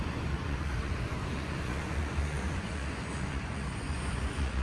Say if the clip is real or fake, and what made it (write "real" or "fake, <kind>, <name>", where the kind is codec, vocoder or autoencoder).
fake, vocoder, Vocos